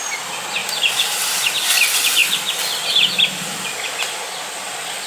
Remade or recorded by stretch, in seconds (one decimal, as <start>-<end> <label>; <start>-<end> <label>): 0.0-0.6 recorded; 0.6-1.7 remade; 1.7-5.1 recorded